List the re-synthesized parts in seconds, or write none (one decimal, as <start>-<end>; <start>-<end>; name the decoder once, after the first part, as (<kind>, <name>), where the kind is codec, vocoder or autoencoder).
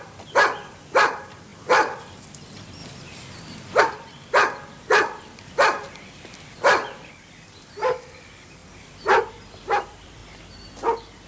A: 0.0-2.8 (vocoder, BigVGAN v2); 3.8-8.6; 9.3-10.2